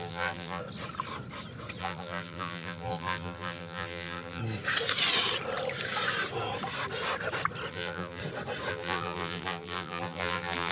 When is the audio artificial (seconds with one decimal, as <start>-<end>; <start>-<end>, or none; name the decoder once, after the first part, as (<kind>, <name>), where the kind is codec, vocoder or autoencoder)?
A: 0.0-0.6 (vocoder, BigVGAN v2); 1.8-4.4; 7.7-8.2; 8.7-10.7